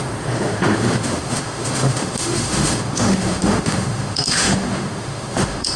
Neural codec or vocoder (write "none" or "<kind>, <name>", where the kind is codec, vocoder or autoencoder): autoencoder, DAC-VAE